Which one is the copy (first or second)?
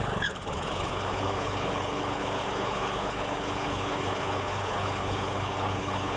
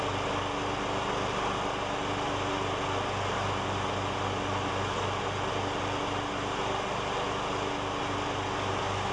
first